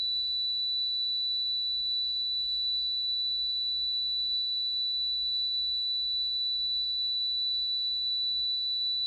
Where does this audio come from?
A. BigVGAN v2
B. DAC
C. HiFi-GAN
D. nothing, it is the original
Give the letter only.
B